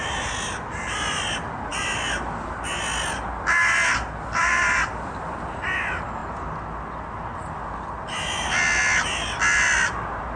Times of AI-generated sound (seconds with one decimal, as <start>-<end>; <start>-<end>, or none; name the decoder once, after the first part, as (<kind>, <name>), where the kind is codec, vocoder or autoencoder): none